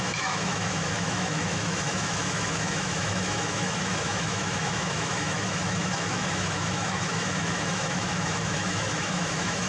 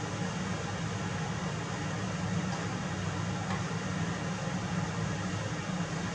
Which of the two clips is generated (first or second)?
first